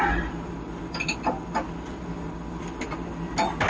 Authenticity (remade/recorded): recorded